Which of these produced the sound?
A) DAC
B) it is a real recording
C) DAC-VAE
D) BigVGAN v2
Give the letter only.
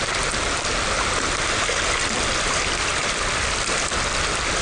B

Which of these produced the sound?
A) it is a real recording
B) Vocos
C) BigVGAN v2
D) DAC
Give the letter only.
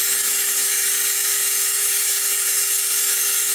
D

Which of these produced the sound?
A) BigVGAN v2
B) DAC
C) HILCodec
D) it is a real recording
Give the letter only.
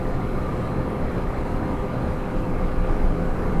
B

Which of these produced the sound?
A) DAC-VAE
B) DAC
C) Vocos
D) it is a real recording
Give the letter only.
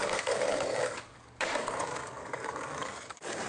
B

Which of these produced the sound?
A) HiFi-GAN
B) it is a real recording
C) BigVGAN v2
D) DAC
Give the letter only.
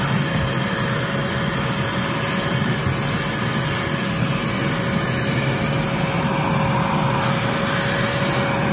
B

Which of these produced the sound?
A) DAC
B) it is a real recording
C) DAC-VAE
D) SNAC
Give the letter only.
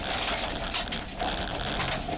B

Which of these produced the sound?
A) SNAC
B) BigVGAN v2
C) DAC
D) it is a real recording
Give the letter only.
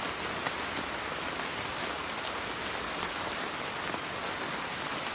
D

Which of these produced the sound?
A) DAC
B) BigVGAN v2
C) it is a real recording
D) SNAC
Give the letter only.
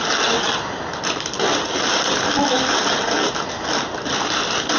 C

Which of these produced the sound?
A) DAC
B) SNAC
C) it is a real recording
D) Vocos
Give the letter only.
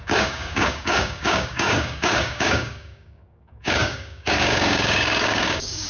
A